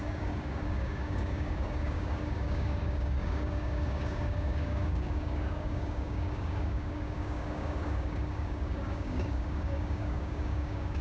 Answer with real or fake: fake